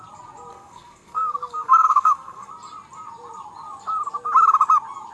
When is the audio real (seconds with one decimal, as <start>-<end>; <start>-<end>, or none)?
0.0-0.5; 2.5-5.1